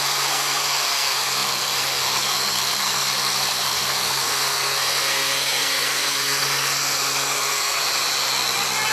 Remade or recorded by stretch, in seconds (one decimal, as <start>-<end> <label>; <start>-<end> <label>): 0.0-7.8 remade; 7.8-8.9 recorded